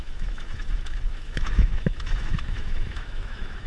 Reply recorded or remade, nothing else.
remade